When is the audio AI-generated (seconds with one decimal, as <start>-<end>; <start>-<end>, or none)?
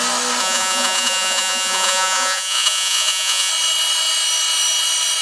0.4-3.5